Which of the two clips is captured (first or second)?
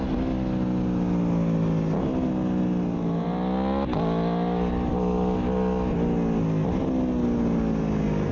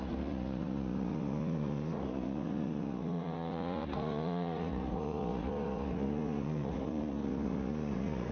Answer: first